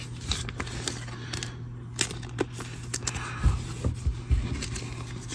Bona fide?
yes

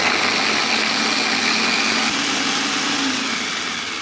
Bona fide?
yes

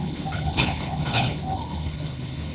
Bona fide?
no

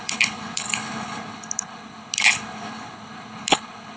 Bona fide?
no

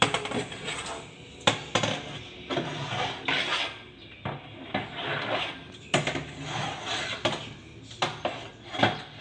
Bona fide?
yes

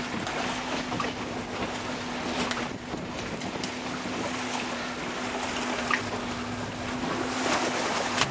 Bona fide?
yes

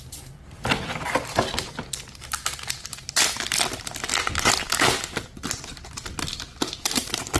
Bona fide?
yes